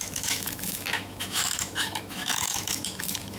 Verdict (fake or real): fake